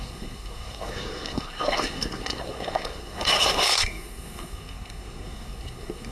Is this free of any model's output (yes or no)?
no